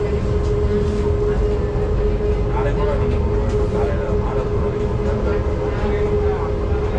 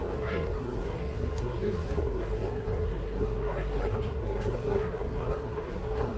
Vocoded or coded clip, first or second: second